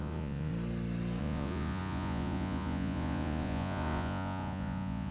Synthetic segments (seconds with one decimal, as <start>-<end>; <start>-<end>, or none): 0.0-0.5; 1.2-5.1